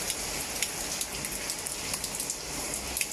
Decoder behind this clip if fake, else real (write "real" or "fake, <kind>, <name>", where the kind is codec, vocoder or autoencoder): real